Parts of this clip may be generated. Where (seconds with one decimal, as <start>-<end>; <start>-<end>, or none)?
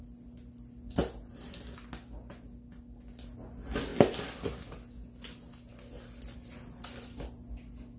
none